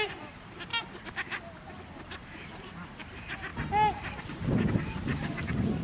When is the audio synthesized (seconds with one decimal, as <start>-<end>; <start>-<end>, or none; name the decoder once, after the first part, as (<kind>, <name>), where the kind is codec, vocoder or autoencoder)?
0.0-0.7 (vocoder, BigVGAN v2); 2.0-3.5; 4.2-5.8